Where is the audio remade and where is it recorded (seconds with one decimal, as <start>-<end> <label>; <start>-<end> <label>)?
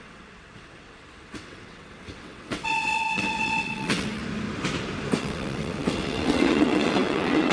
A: 0.0-4.2 remade; 4.2-5.2 recorded; 5.2-7.5 remade